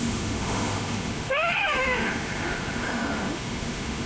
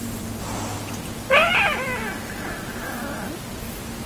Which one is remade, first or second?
first